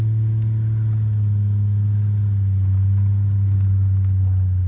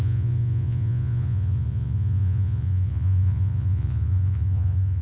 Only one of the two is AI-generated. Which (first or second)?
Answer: second